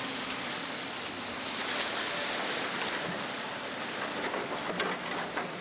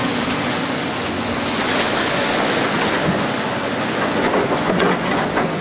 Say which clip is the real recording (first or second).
first